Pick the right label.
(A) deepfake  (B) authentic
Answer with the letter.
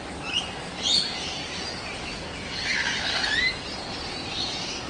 B